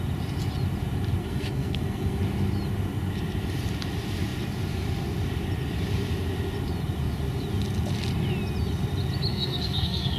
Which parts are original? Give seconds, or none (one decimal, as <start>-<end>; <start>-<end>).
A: 0.0-1.2; 2.2-9.3